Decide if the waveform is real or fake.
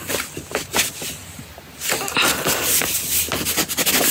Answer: real